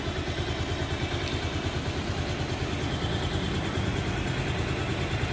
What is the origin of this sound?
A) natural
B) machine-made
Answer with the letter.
A